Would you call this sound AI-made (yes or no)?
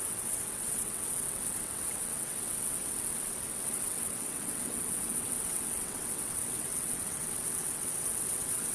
yes